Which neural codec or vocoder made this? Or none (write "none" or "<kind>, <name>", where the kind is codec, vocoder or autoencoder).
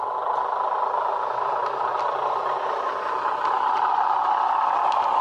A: none